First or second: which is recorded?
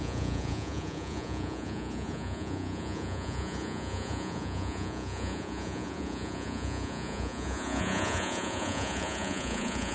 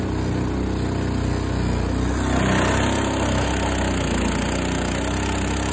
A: second